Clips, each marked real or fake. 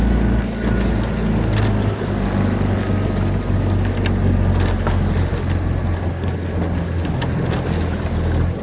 real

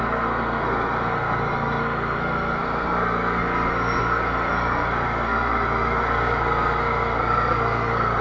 fake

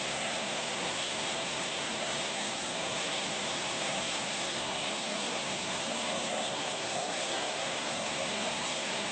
fake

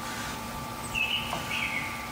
real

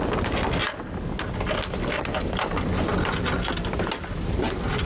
real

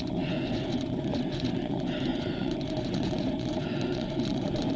fake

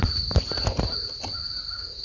real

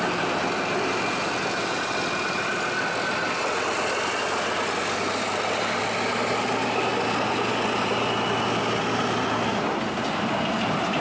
real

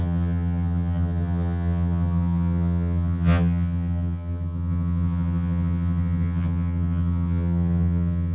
fake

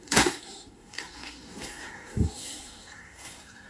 fake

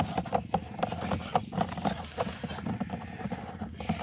real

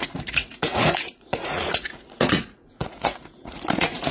fake